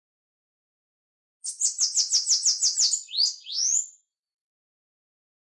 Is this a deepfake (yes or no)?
no